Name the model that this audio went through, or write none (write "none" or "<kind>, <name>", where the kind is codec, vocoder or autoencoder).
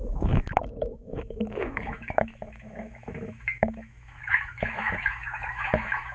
autoencoder, DAC-VAE